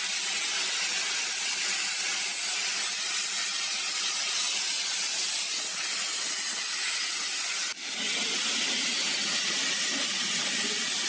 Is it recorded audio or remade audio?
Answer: recorded